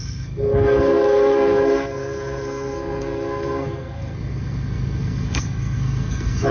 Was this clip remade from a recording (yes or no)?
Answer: yes